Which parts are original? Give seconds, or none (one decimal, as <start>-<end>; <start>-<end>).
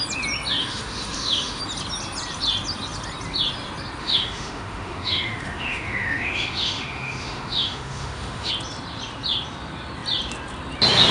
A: 0.0-0.6; 1.6-4.0; 8.5-11.1